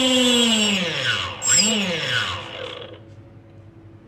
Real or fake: real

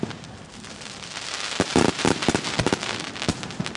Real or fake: fake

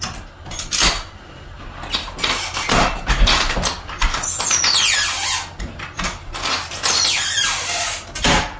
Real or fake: real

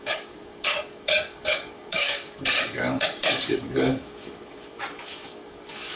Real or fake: fake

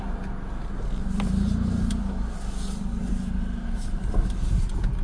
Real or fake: real